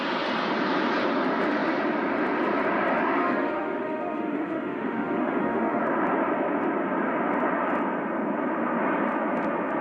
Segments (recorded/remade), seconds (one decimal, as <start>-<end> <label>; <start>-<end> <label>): 0.0-3.2 recorded; 3.2-5.8 remade; 5.8-9.8 recorded